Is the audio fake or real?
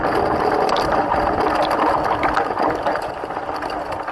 real